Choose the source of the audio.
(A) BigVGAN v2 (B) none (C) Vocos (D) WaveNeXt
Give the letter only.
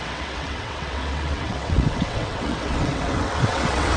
D